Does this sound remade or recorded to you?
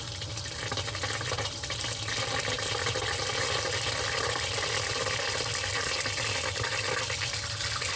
recorded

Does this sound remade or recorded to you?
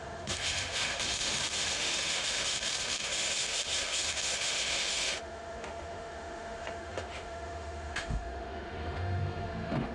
remade